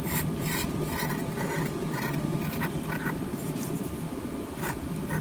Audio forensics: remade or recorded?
remade